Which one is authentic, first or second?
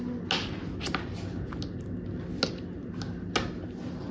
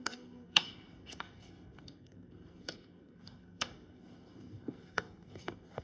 first